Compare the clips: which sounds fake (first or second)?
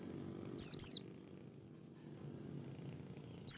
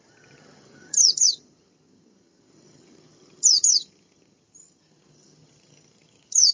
second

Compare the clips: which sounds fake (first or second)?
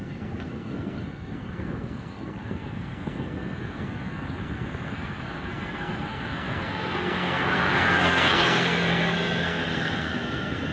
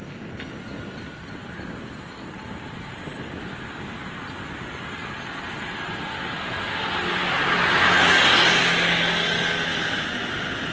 first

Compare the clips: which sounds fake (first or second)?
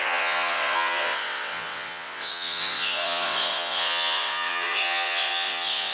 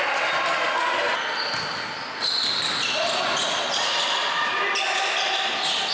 first